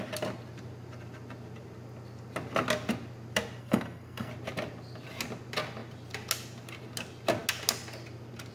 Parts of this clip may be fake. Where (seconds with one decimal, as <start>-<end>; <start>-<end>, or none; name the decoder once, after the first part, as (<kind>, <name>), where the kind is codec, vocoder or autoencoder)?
3.6-4.3 (codec, SNAC)